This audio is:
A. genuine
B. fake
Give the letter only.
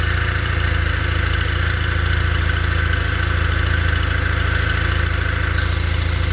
A